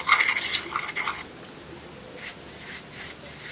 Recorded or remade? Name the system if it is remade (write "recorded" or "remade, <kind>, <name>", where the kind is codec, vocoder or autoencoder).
recorded